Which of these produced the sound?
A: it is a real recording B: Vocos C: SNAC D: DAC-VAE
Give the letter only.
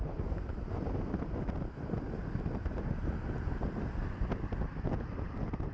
A